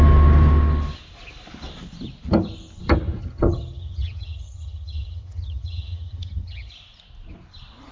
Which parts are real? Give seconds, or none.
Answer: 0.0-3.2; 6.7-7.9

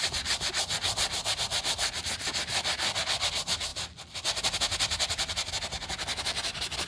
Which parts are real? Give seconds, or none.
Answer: 0.0-6.9

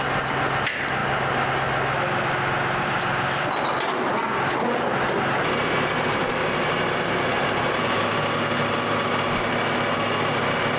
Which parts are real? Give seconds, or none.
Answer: 0.0-7.3; 8.0-10.8

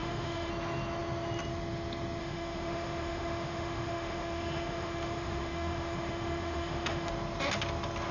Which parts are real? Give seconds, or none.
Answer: 0.5-2.2; 7.1-8.1

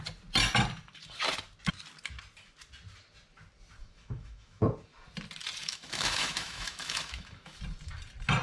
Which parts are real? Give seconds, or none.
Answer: 0.0-3.8; 4.6-5.6; 7.6-8.4

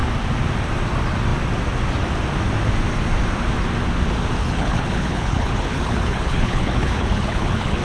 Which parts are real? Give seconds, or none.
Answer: 0.0-4.4